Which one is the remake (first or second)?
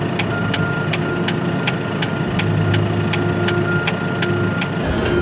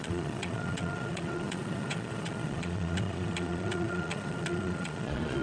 second